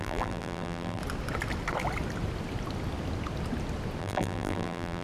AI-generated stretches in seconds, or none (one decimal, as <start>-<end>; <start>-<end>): 0.0-1.0; 4.0-5.0